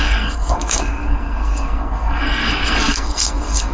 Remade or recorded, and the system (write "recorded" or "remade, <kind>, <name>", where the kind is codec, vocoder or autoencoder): remade, codec, SNAC